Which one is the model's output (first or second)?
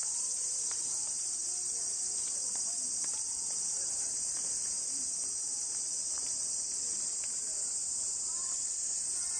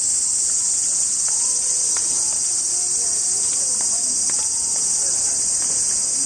first